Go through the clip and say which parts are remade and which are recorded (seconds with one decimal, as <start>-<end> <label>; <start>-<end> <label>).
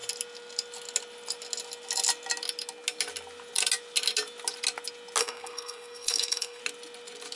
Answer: 0.0-5.2 recorded; 5.2-6.6 remade; 6.6-7.4 recorded